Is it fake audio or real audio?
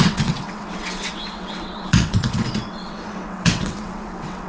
fake